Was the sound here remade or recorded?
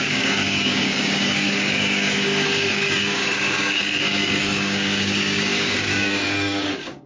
remade